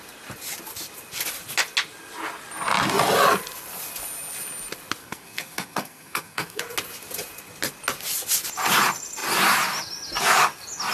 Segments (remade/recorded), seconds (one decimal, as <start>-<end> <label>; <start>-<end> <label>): 0.0-5.0 recorded; 5.0-6.6 remade; 6.6-10.9 recorded